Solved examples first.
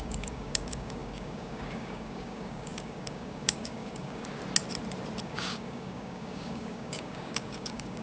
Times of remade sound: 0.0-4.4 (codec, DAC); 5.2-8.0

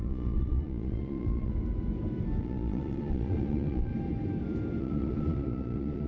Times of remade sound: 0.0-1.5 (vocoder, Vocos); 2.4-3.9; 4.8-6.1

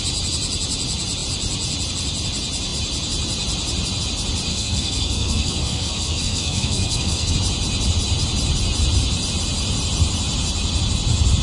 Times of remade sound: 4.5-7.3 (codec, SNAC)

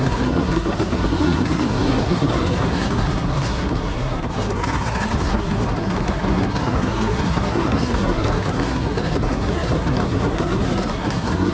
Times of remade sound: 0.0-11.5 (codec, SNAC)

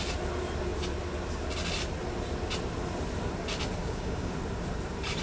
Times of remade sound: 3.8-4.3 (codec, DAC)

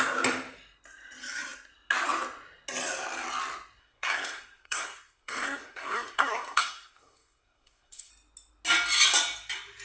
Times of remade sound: 3.8-8.1 (codec, SNAC)